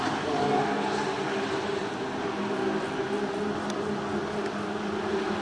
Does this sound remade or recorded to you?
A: recorded